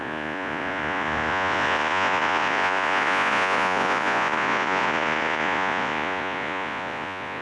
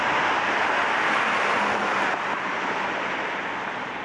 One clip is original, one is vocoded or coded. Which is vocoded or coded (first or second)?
first